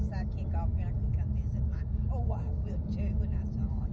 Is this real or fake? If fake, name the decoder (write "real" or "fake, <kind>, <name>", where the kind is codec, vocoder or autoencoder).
real